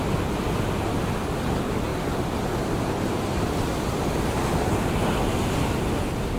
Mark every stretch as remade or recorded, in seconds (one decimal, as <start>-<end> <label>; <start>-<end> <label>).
0.0-6.4 recorded